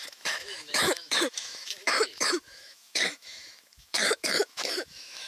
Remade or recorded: remade